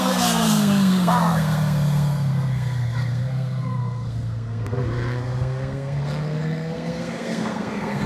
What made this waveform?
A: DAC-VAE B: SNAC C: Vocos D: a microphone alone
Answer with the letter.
B